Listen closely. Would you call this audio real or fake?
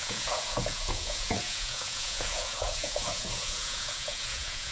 fake